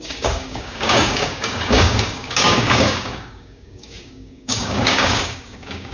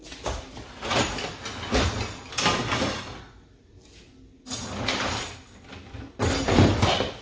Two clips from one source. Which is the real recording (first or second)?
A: second